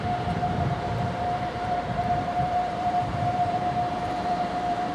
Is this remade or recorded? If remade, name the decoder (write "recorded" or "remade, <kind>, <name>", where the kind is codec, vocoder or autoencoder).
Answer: remade, vocoder, BigVGAN v2